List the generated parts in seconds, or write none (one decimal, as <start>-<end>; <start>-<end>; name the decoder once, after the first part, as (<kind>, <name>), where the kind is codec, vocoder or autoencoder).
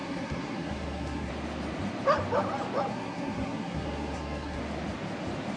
0.0-1.3 (codec, SNAC); 2.9-4.6